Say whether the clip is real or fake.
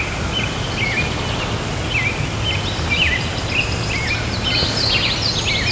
real